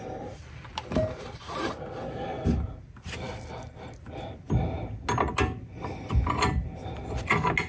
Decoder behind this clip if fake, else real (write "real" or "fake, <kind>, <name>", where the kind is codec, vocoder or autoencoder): real